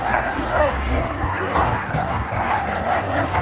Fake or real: fake